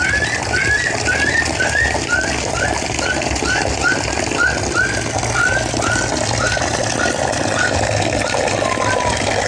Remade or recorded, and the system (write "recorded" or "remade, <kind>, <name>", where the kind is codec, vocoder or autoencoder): recorded